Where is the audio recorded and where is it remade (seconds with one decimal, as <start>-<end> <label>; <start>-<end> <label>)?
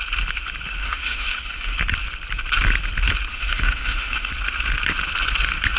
0.0-0.8 recorded; 0.8-1.8 remade; 1.8-3.3 recorded; 3.3-4.3 remade; 4.3-5.8 recorded